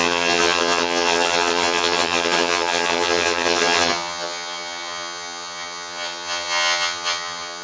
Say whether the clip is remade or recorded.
remade